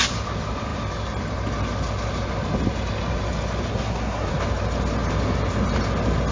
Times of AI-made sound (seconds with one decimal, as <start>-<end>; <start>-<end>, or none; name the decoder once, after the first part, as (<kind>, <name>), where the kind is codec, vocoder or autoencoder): 3.7-4.3 (codec, SNAC)

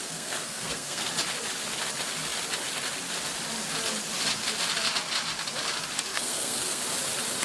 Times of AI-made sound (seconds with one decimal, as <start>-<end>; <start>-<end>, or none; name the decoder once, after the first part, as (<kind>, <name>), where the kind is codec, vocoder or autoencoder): 0.0-1.1 (codec, SNAC); 6.1-6.8

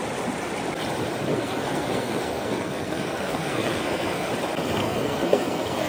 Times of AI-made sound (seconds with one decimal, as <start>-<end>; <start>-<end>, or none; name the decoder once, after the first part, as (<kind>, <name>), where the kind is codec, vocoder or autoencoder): 1.3-4.3 (codec, SNAC); 4.8-5.9